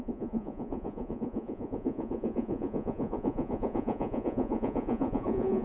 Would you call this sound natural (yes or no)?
no